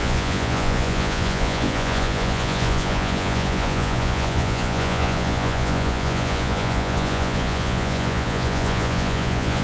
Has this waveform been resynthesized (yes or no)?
yes